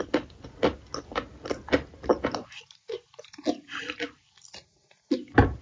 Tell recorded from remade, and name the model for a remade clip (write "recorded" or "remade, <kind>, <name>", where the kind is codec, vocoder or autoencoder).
recorded